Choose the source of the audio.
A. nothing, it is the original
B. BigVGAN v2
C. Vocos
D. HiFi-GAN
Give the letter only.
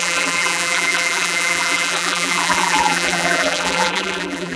B